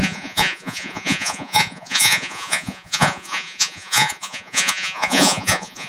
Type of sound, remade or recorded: remade